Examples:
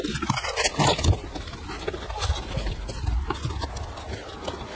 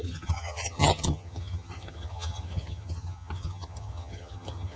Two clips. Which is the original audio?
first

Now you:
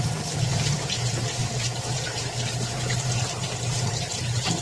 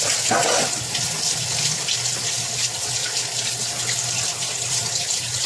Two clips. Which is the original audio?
second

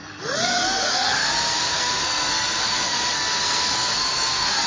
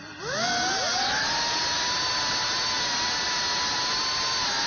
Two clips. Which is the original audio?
second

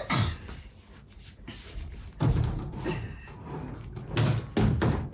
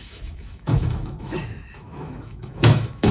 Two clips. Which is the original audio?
first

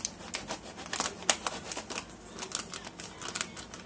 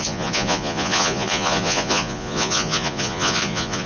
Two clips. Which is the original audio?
first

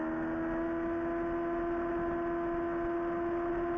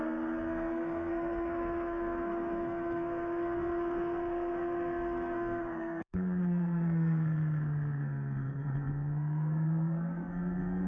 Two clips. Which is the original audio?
first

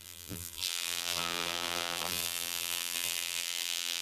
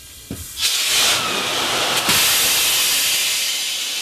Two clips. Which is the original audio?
second